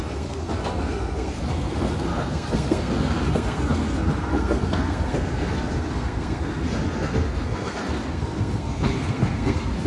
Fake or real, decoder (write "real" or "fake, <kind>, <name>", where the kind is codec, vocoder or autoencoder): fake, codec, SNAC